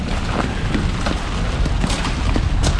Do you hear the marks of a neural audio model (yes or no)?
no